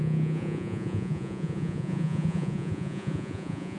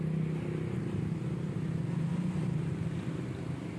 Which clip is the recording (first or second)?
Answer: second